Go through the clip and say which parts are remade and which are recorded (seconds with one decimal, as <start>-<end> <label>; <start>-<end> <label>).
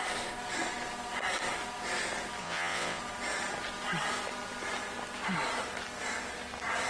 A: 0.0-2.4 recorded; 2.4-3.0 remade; 3.0-6.9 recorded